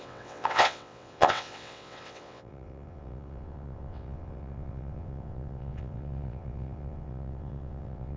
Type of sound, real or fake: fake